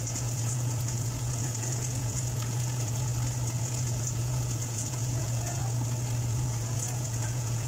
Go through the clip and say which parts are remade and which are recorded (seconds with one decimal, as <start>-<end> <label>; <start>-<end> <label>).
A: 0.0-3.1 remade; 3.1-3.6 recorded; 3.6-5.6 remade; 5.6-6.2 recorded; 6.2-7.7 remade